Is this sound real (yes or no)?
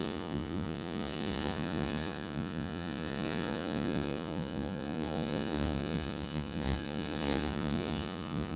no